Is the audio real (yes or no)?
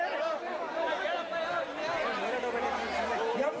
yes